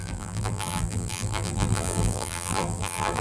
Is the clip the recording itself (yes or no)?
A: no